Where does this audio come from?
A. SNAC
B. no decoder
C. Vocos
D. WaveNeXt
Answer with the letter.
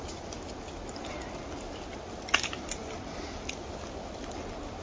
B